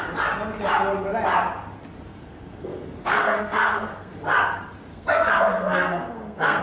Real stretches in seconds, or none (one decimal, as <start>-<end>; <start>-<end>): 0.0-2.1; 4.2-4.9